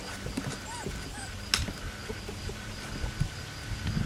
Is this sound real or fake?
real